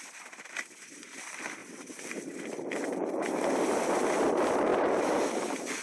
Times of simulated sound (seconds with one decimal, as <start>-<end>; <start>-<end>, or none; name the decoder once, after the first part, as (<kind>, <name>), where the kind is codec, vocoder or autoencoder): 1.6-4.2 (vocoder, BigVGAN v2); 4.7-5.8

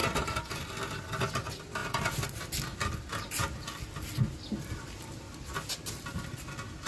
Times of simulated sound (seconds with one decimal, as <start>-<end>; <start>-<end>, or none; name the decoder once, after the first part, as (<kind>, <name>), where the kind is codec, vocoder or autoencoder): none

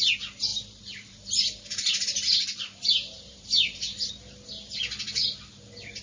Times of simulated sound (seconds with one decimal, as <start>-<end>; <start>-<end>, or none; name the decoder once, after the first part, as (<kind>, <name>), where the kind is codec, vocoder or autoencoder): 0.5-4.1 (vocoder, BigVGAN v2)

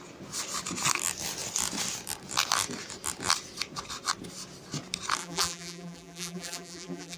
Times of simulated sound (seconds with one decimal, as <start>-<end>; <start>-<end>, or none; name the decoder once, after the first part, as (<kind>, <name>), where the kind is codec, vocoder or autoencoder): 5.2-7.2 (vocoder, BigVGAN v2)

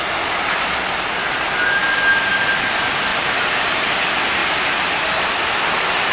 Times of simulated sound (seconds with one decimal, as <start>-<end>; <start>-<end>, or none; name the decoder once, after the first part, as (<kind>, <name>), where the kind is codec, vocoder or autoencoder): 0.0-0.7 (vocoder, BigVGAN v2); 3.1-3.9; 4.4-5.0

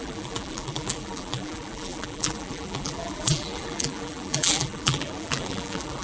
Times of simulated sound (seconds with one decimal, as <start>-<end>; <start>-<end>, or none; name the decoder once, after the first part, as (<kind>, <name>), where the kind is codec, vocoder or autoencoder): 0.0-6.0 (vocoder, BigVGAN v2)

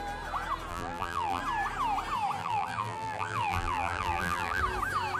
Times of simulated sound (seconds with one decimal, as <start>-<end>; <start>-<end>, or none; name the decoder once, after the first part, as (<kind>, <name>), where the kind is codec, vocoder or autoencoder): 0.7-1.4 (vocoder, BigVGAN v2); 2.4-4.6

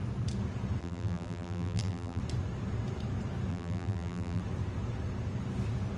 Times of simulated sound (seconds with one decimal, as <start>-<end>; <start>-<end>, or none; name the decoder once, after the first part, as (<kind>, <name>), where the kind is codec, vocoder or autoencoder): 0.8-2.2 (vocoder, BigVGAN v2); 3.5-4.4